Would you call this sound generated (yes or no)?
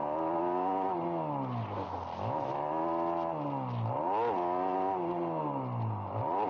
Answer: no